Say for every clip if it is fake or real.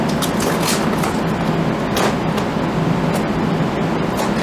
real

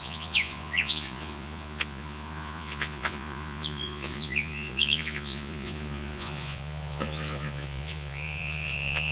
fake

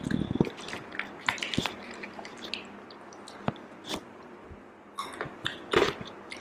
real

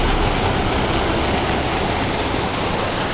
real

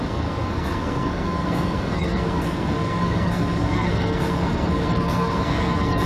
fake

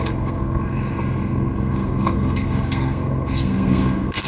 fake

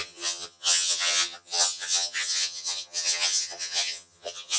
fake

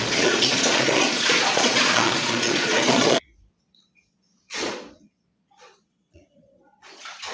fake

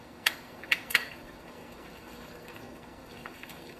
fake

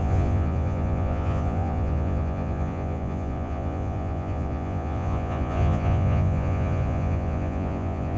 fake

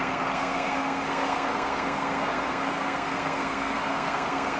fake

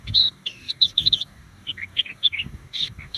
fake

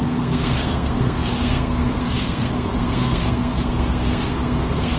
fake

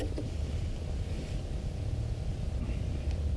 fake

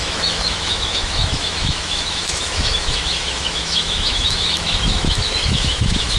fake